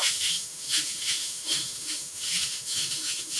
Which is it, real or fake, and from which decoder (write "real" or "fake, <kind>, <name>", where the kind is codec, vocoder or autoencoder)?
fake, autoencoder, DAC-VAE